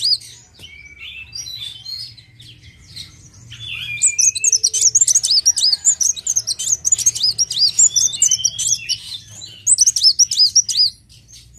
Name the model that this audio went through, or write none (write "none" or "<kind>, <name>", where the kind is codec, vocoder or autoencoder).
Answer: none